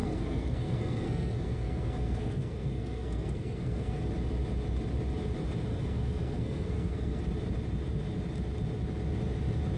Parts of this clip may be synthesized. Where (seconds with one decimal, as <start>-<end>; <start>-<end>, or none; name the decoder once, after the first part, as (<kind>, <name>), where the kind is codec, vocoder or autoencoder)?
0.0-4.0 (codec, SNAC); 5.7-7.2